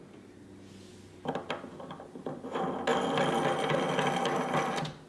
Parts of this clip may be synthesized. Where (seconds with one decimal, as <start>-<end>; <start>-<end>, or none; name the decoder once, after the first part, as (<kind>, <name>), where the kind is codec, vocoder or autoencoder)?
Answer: none